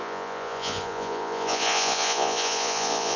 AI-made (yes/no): yes